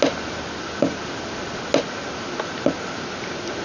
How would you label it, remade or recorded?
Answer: recorded